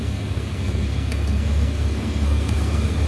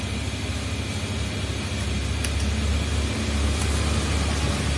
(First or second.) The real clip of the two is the second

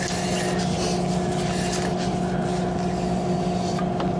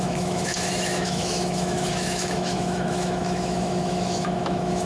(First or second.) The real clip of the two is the first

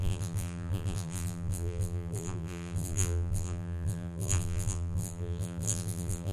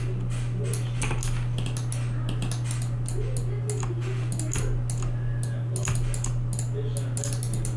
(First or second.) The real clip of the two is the second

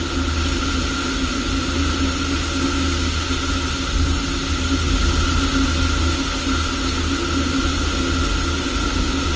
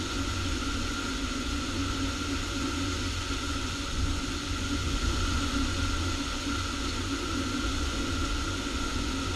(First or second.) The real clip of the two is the first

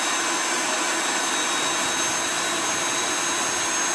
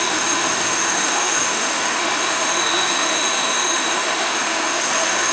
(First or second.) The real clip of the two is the first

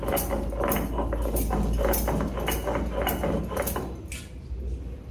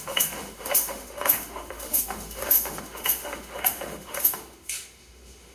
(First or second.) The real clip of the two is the first